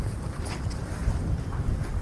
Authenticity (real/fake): fake